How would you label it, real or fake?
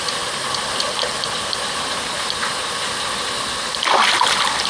real